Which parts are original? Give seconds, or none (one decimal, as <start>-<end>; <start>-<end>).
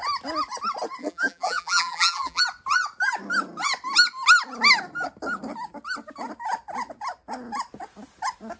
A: 0.0-1.0; 2.4-8.6